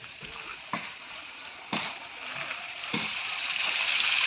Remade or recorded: recorded